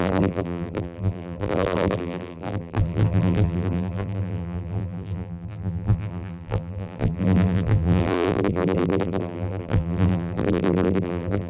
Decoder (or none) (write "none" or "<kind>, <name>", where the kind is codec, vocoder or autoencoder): vocoder, BigVGAN v2